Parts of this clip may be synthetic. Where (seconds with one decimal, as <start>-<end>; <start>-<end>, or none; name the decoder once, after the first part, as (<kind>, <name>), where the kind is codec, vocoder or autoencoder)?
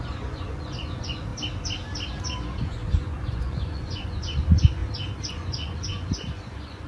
0.0-1.3 (vocoder, Vocos); 2.2-4.8; 5.3-6.9